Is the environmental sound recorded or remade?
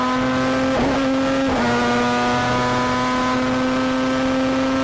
recorded